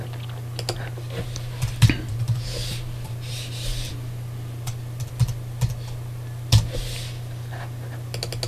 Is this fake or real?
real